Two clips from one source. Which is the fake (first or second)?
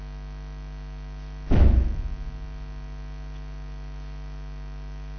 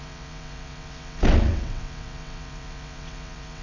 second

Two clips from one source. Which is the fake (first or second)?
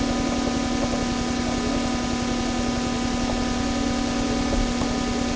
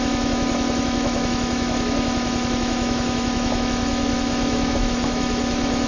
second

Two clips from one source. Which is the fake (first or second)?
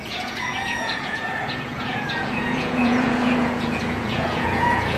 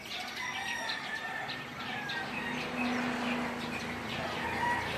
first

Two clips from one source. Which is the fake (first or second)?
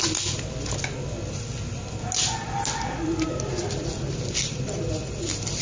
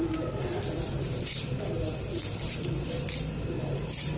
second